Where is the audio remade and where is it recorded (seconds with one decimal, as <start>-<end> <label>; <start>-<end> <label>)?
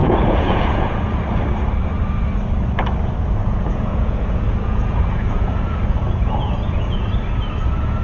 0.0-1.2 remade; 1.2-3.4 recorded; 3.4-7.1 remade; 7.1-8.0 recorded